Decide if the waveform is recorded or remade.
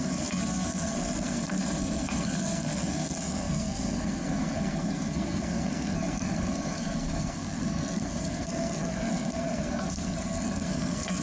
remade